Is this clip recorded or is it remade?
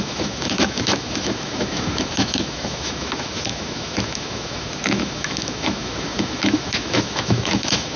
remade